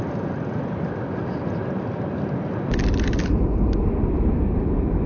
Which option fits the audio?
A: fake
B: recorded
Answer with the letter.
B